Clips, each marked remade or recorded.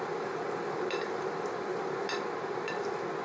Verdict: remade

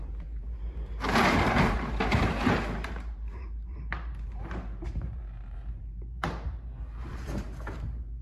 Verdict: remade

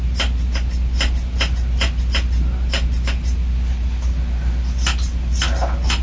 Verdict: recorded